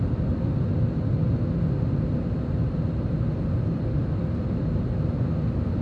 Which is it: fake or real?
real